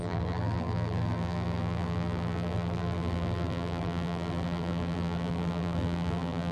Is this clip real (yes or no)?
no